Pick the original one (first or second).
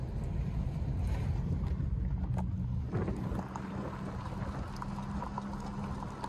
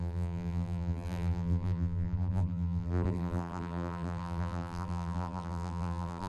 first